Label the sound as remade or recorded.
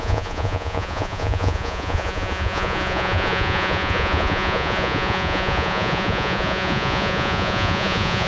remade